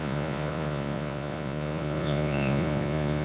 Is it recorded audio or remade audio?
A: remade